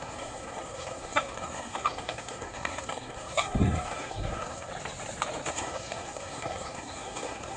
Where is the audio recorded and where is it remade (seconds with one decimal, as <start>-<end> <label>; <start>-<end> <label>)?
0.0-4.7 remade; 4.7-5.5 recorded; 5.5-7.6 remade